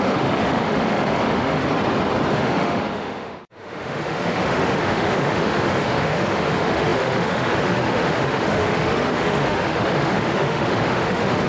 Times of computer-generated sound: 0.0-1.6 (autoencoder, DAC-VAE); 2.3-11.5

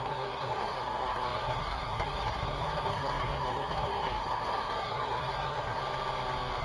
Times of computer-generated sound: 0.0-5.8 (codec, SNAC)

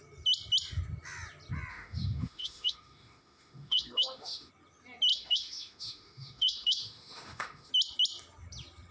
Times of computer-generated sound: 1.7-4.5 (autoencoder, DAC-VAE); 5.1-7.7

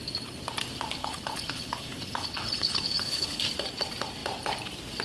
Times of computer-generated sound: 1.0-3.4 (codec, HILCodec)

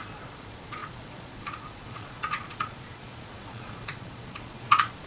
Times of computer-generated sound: 0.0-5.1 (vocoder, Vocos)

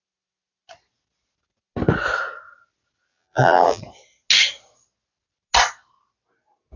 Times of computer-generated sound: 3.1-3.8 (vocoder, BigVGAN v2)

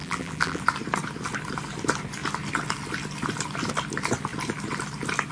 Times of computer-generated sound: 0.0-0.6 (vocoder, BigVGAN v2)